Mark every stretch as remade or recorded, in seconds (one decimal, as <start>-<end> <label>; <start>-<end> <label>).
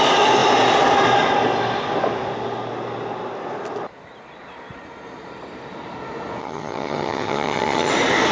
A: 0.0-6.4 recorded; 6.4-7.9 remade; 7.9-8.3 recorded